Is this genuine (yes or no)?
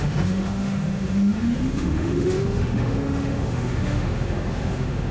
no